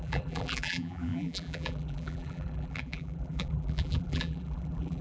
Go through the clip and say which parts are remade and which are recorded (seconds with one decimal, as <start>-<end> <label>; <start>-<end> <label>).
0.0-5.0 remade

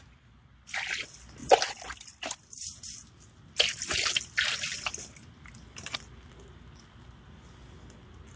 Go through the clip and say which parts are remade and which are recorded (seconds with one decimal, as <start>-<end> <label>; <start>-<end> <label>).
0.0-8.4 recorded

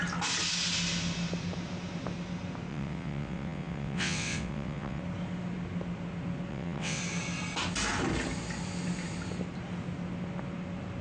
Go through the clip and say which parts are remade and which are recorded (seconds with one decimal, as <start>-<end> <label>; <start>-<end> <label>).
0.0-2.7 recorded; 2.7-5.0 remade; 5.0-6.5 recorded; 6.5-7.0 remade; 7.0-11.0 recorded

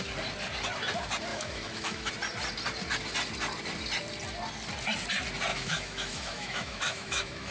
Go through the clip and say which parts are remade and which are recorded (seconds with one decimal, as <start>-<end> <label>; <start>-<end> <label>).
0.0-1.3 recorded; 1.3-2.1 remade; 2.1-5.5 recorded; 5.5-7.5 remade

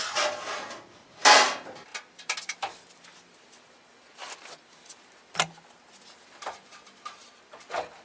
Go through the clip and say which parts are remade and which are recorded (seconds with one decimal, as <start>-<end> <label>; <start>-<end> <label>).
0.0-1.9 recorded; 1.9-3.4 remade; 3.4-6.7 recorded; 6.7-7.3 remade; 7.3-8.0 recorded

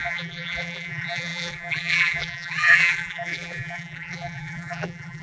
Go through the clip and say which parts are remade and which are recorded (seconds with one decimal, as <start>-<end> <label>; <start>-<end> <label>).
0.0-5.2 remade